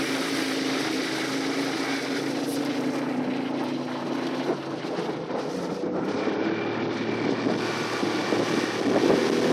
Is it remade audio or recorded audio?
recorded